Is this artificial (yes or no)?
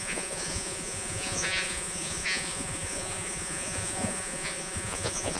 yes